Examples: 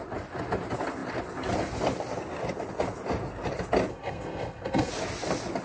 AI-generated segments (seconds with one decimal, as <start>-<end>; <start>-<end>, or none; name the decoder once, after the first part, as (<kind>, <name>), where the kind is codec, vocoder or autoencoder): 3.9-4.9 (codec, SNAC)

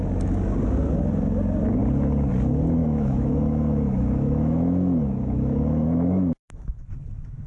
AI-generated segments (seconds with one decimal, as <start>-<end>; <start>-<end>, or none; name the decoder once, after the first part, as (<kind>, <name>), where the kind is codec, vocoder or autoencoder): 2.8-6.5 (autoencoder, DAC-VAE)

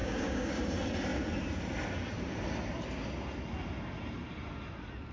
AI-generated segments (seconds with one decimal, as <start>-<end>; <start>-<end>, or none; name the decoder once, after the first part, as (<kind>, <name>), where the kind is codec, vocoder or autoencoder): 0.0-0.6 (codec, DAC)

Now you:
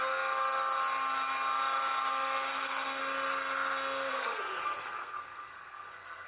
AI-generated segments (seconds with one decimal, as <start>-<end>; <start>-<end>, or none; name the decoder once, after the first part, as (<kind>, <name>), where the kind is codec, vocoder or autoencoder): 2.5-3.0 (codec, SNAC); 4.1-6.3

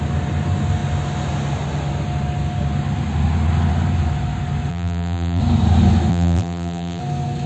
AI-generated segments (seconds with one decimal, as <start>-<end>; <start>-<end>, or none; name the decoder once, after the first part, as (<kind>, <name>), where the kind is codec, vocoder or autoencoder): 4.7-5.4 (vocoder, BigVGAN v2); 6.1-7.0

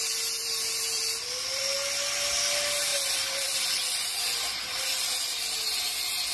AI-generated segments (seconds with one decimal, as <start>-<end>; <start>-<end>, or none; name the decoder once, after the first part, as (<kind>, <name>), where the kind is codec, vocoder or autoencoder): 0.4-1.6 (vocoder, BigVGAN v2); 2.9-3.9